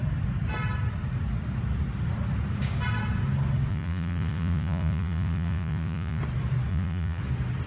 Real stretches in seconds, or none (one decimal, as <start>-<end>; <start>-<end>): 0.0-3.7; 6.2-6.7; 7.2-7.7